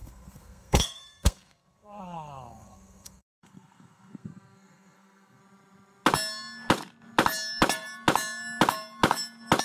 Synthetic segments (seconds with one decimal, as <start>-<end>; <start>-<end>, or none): 0.0-5.4